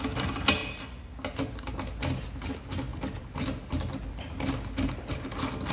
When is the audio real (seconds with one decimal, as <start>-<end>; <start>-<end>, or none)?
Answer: 0.0-5.7